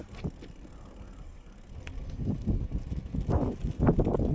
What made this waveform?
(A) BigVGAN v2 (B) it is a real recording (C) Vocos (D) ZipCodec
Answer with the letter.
B